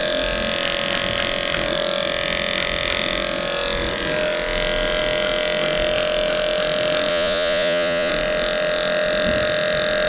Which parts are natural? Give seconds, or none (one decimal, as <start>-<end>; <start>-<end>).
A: 0.0-7.1; 8.1-10.1